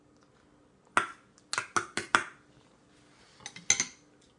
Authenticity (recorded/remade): recorded